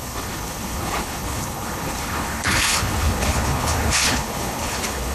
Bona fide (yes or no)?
no